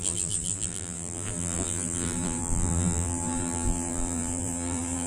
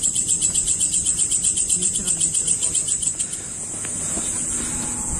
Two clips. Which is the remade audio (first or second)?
first